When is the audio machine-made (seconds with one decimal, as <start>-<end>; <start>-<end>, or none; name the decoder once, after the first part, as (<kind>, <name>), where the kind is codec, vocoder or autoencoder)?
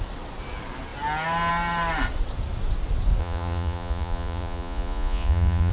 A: 3.2-5.7 (vocoder, Vocos)